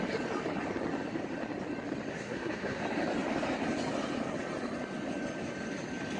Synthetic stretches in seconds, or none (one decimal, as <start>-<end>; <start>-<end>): 2.1-2.8